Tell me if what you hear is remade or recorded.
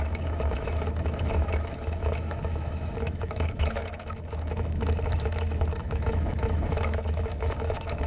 remade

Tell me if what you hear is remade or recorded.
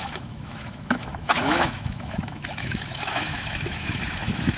remade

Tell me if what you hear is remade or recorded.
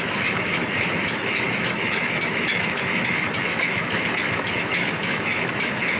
remade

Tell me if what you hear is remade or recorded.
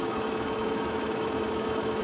remade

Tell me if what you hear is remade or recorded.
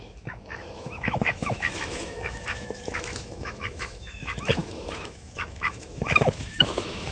remade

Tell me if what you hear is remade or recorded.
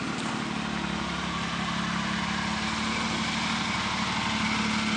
recorded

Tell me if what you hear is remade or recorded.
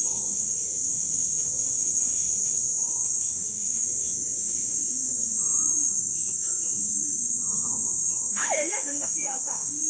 remade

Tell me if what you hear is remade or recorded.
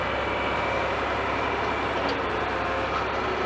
recorded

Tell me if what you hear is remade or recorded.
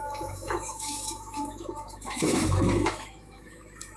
remade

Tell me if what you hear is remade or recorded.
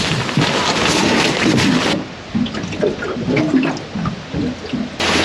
recorded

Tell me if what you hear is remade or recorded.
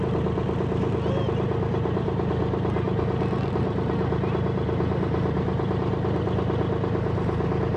recorded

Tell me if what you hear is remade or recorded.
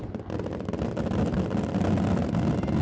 recorded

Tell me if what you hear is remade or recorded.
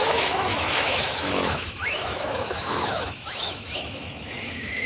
remade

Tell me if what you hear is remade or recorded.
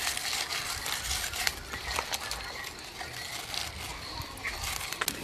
recorded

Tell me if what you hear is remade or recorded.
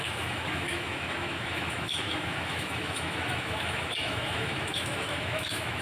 remade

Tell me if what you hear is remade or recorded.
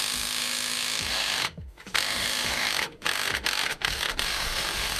remade